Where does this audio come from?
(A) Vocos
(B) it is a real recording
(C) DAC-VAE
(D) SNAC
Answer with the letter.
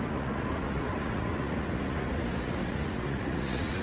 A